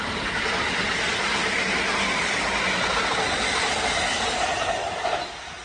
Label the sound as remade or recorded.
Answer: recorded